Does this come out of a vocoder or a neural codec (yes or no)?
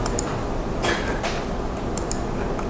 yes